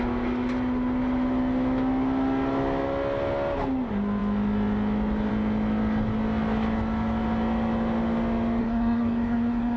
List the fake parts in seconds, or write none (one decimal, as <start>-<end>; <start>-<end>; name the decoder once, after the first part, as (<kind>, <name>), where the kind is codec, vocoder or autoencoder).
8.6-9.8 (codec, SNAC)